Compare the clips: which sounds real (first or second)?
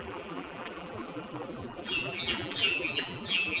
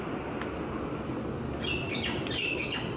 second